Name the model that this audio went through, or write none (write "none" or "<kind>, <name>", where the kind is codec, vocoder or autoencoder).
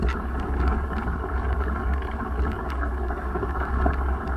codec, DAC